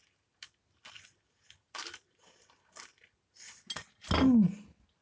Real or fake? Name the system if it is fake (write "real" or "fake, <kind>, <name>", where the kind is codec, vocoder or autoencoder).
real